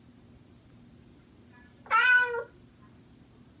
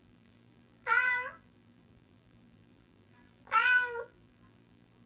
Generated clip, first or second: second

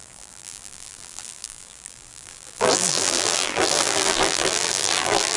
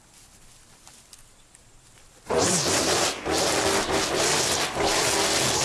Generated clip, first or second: first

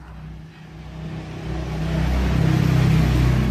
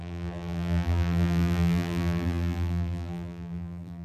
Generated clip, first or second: second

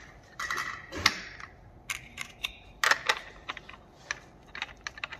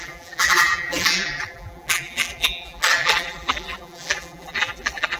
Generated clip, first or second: second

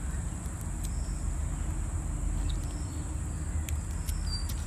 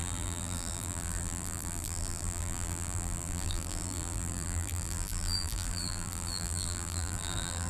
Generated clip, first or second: second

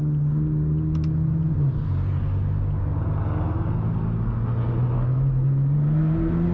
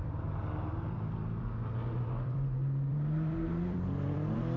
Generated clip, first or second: second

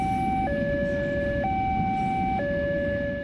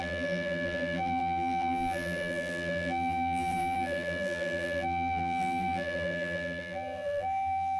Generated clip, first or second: second